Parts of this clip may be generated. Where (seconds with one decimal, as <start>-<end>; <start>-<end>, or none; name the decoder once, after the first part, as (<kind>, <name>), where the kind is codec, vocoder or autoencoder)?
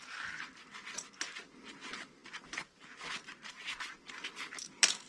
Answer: none